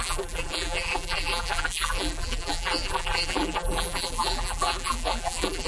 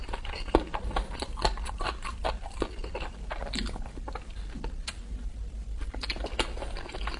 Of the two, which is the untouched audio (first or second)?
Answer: second